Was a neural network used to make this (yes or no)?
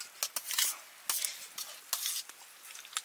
no